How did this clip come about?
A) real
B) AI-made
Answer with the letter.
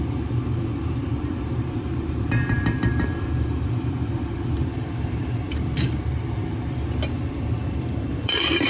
B